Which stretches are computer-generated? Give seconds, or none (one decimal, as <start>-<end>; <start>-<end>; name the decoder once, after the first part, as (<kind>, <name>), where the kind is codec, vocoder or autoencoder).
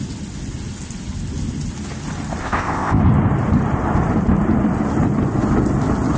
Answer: 2.4-3.0 (codec, ZipCodec)